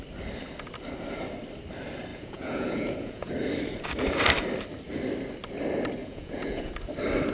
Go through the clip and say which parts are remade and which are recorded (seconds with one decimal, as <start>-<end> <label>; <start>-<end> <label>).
0.0-2.1 recorded; 2.1-3.3 remade; 3.3-6.0 recorded; 6.0-6.7 remade; 6.7-7.3 recorded